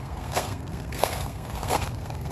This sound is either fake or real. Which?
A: fake